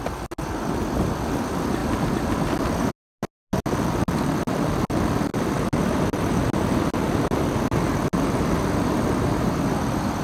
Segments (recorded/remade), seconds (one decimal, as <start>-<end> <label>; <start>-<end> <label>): 0.0-10.2 recorded